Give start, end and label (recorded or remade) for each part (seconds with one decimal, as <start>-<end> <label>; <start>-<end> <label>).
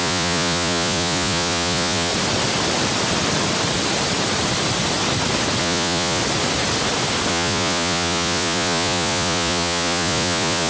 0.0-2.1 remade; 2.1-5.6 recorded; 5.6-6.2 remade; 6.2-7.3 recorded; 7.3-10.7 remade